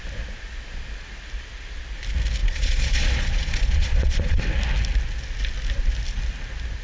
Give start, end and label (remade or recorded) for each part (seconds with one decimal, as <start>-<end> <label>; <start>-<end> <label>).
0.0-2.4 recorded; 2.4-4.4 remade; 4.4-6.8 recorded

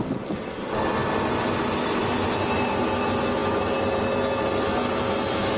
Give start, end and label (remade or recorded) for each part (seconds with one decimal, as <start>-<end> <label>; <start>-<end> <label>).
0.0-5.6 recorded

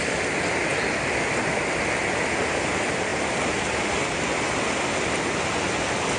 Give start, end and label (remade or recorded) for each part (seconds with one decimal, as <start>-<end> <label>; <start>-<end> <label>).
0.0-6.2 recorded

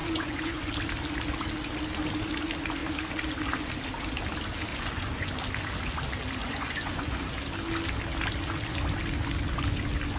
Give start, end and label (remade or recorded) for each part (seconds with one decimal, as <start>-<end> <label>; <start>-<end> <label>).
0.0-0.7 remade; 0.7-4.7 recorded; 4.7-5.3 remade; 5.3-6.4 recorded; 6.4-7.2 remade; 7.2-10.2 recorded

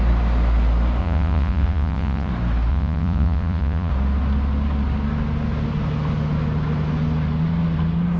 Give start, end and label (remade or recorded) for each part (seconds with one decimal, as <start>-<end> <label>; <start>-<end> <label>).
0.0-1.0 recorded; 1.0-2.3 remade; 2.3-2.7 recorded; 2.7-3.9 remade; 3.9-8.2 recorded

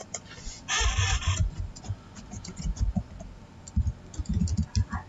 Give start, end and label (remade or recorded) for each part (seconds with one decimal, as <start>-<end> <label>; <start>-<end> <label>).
0.0-3.1 remade; 3.1-5.1 recorded

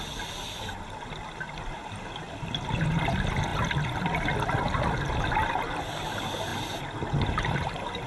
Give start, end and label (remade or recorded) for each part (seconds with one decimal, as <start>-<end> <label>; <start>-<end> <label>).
0.0-8.1 recorded